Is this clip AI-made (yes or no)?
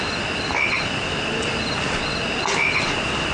no